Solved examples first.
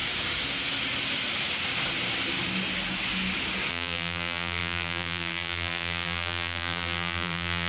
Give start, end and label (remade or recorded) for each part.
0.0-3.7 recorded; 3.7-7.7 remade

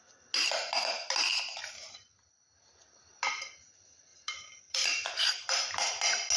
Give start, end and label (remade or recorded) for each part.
0.0-4.1 recorded; 4.1-6.0 remade; 6.0-6.4 recorded